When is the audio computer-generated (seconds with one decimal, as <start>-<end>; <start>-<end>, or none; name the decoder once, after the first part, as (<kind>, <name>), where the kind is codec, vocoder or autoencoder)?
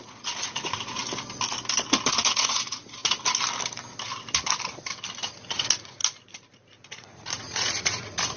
0.0-1.0 (vocoder, Vocos); 2.3-3.0; 5.5-6.0; 6.9-8.4